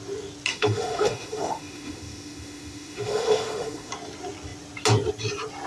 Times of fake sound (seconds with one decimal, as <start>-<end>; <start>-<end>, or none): 0.5-3.9